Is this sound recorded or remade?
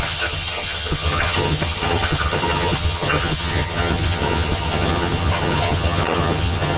remade